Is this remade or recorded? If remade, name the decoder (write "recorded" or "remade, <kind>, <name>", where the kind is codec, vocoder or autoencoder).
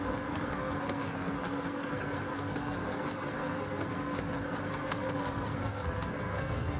remade, codec, SNAC